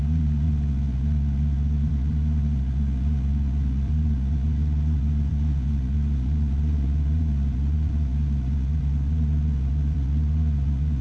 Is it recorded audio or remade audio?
remade